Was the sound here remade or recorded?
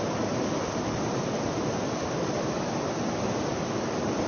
recorded